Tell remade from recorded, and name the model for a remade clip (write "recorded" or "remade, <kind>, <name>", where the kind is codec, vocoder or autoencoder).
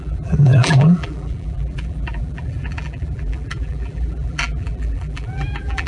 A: remade, vocoder, BigVGAN v2